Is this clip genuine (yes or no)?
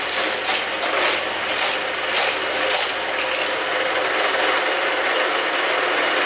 yes